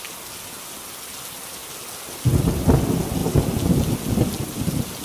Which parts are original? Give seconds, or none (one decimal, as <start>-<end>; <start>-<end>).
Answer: 0.0-5.0